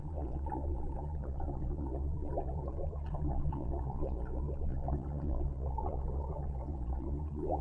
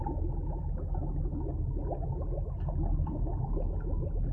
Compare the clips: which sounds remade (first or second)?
first